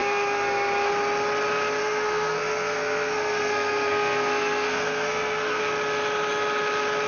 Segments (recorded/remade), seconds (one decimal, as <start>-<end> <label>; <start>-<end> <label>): 0.0-0.9 remade; 0.9-1.8 recorded; 1.8-5.6 remade; 5.6-7.1 recorded